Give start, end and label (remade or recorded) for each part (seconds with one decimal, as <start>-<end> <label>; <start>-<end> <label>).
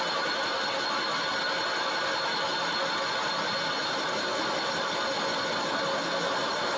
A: 0.0-6.8 recorded